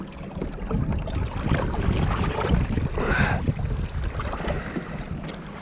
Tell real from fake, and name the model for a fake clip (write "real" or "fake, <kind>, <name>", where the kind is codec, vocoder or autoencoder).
real